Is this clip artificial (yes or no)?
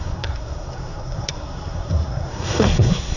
yes